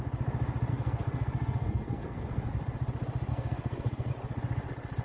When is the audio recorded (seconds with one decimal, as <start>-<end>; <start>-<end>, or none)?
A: 0.0-0.7; 2.5-3.3; 4.1-5.0